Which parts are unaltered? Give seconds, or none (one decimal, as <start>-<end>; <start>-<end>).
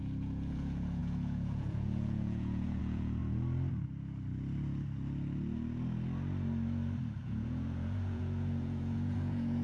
3.2-7.2